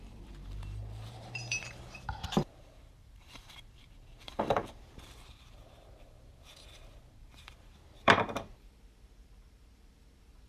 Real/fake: fake